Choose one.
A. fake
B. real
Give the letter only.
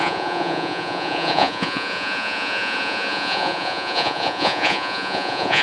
A